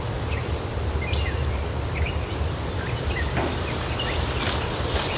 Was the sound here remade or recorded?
remade